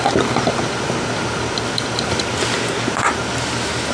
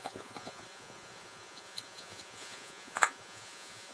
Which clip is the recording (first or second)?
first